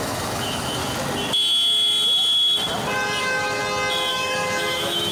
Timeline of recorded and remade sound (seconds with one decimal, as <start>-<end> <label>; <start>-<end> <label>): 0.0-0.8 remade; 0.8-3.2 recorded; 3.2-3.6 remade; 3.6-4.1 recorded; 4.1-5.1 remade